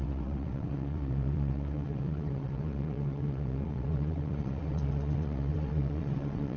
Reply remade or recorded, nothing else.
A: remade